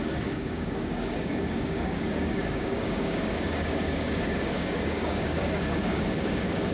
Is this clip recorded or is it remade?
remade